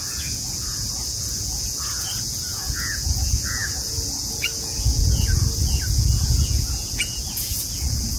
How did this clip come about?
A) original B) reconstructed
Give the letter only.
B